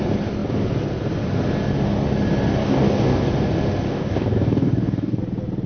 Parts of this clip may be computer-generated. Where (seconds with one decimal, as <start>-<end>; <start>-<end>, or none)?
2.6-3.2; 3.9-5.2